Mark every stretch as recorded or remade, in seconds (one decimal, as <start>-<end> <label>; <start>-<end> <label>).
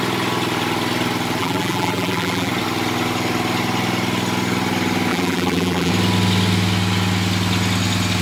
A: 0.0-1.4 recorded; 1.4-2.5 remade; 2.5-5.1 recorded; 5.1-5.9 remade; 5.9-8.2 recorded